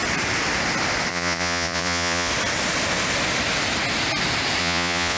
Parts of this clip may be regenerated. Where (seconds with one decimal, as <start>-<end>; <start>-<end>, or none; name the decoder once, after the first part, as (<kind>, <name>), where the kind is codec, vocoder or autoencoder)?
1.1-2.3 (vocoder, Vocos); 4.6-5.2